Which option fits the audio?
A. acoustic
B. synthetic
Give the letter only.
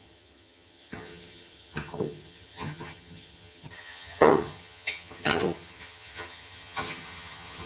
B